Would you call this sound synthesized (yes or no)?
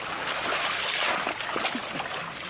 no